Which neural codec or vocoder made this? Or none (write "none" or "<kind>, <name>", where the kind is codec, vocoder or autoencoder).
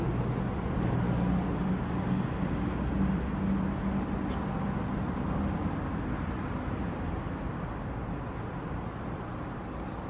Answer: none